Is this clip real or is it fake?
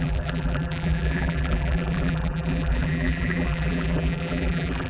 fake